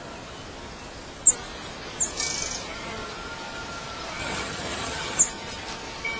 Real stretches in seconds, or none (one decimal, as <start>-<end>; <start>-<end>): 0.0-4.2; 5.2-6.2

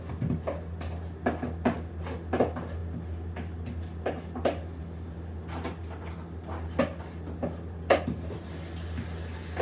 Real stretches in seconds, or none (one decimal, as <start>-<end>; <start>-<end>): 0.0-9.6

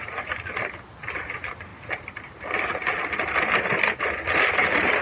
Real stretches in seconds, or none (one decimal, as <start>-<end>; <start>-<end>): 0.0-5.0

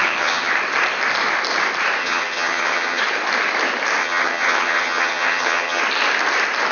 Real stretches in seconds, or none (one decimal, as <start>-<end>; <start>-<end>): 0.5-2.0; 3.0-4.0; 5.8-6.7

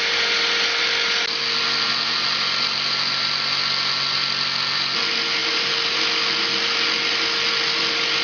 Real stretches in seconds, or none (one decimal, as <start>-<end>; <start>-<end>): 0.0-8.2

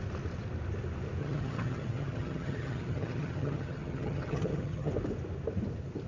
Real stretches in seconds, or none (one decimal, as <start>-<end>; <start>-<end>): 0.0-1.2; 4.9-6.1